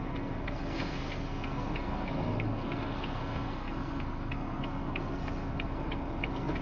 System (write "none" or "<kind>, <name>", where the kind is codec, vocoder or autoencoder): codec, SNAC